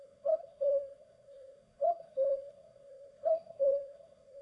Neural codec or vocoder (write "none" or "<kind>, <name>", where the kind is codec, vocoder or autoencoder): codec, SNAC